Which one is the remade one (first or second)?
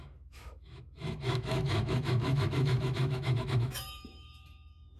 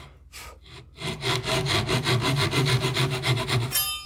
first